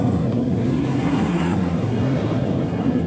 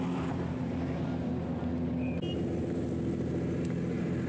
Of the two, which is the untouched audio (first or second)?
second